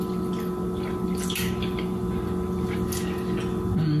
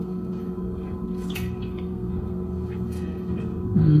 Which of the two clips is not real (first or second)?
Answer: second